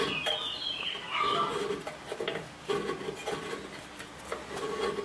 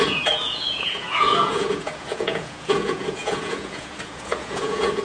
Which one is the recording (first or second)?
first